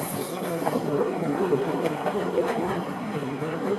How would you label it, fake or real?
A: fake